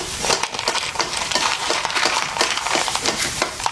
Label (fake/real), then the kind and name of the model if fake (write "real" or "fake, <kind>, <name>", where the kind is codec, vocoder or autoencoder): fake, vocoder, BigVGAN v2